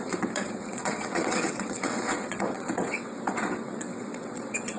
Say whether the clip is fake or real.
fake